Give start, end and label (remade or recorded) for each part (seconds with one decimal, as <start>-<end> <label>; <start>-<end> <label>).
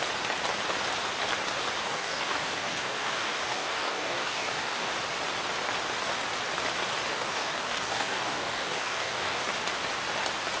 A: 0.0-1.8 recorded; 1.8-4.9 remade; 4.9-7.1 recorded; 7.1-9.4 remade; 9.4-10.6 recorded